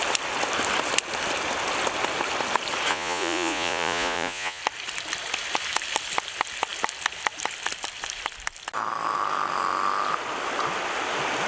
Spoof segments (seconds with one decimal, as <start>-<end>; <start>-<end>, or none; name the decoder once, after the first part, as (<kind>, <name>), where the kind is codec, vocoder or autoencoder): 2.9-4.6 (vocoder, Vocos)